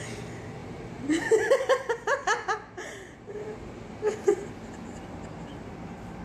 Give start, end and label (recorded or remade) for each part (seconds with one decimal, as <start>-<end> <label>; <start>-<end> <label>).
0.0-0.6 recorded; 0.6-4.3 remade; 4.3-6.2 recorded